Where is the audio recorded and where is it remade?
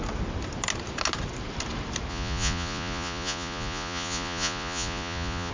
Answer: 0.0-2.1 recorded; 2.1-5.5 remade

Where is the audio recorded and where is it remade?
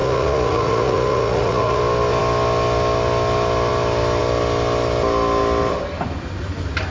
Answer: 0.0-1.8 remade; 1.8-6.9 recorded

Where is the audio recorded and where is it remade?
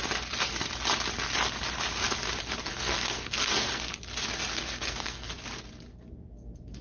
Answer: 0.0-2.7 recorded; 2.7-3.9 remade; 3.9-4.5 recorded; 4.5-5.3 remade; 5.3-5.9 recorded; 5.9-6.8 remade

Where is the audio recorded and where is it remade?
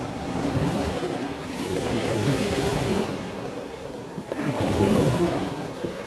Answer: 0.0-6.1 remade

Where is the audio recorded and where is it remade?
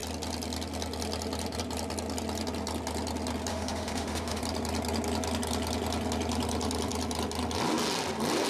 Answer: 0.0-3.5 recorded; 3.5-4.4 remade; 4.4-8.5 recorded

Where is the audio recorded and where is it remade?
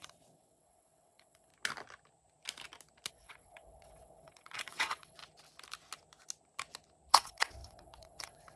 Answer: 0.0-1.5 remade; 1.5-3.1 recorded; 3.1-5.2 remade; 5.2-7.1 recorded; 7.1-8.6 remade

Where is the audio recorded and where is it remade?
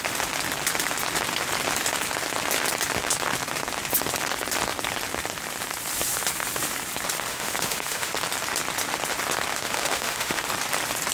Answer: 0.0-7.3 recorded; 7.3-8.1 remade; 8.1-9.5 recorded; 9.5-10.4 remade; 10.4-11.1 recorded